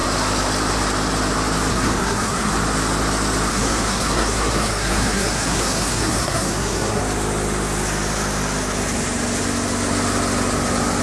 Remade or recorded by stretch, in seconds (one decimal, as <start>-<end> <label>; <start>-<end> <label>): 0.0-1.7 recorded; 1.7-2.5 remade; 2.5-3.5 recorded; 3.5-7.0 remade; 7.0-11.0 recorded